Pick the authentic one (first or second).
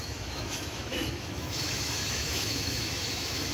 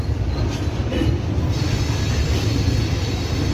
second